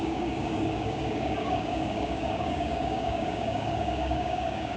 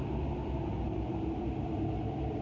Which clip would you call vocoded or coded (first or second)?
first